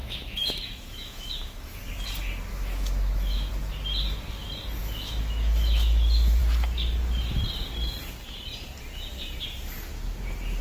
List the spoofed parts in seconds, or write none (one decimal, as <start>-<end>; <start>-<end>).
0.0-1.8; 2.5-3.5; 4.8-6.4